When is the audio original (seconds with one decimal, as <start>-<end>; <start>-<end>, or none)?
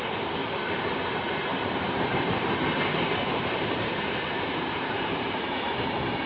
0.0-1.5; 5.3-6.3